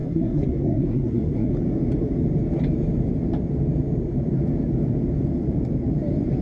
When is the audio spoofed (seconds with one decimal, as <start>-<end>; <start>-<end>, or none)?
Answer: 0.0-1.5